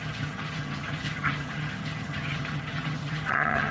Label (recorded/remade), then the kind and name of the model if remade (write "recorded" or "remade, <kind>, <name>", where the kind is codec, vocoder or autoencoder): remade, vocoder, HiFi-GAN